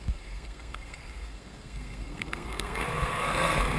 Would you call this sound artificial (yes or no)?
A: yes